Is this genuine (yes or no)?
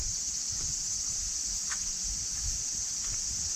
yes